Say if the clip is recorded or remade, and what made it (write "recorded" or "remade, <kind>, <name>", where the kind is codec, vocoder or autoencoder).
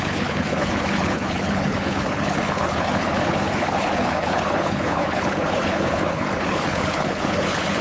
remade, codec, HILCodec